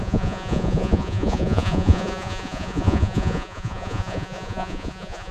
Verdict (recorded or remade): remade